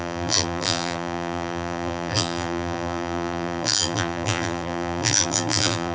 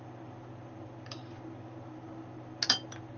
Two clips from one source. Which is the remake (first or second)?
first